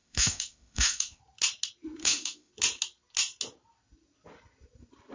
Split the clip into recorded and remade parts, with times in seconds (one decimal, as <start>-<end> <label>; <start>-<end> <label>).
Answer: 0.0-1.2 remade; 1.2-2.0 recorded; 2.0-2.5 remade; 2.5-5.1 recorded